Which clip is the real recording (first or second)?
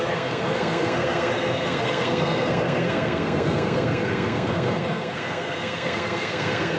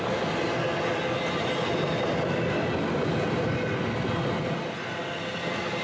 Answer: second